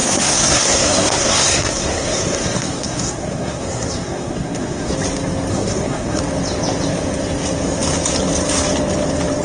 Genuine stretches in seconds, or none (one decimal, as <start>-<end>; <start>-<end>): 4.9-5.5; 6.2-9.4